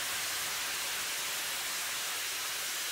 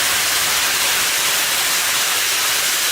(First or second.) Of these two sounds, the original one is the first